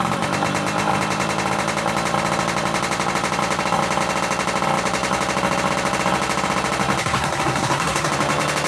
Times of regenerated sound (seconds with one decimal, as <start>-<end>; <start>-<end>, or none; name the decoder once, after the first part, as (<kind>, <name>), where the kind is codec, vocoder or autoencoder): 7.0-8.1 (codec, SNAC)